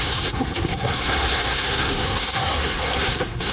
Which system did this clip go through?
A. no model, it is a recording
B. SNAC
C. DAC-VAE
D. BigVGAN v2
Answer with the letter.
B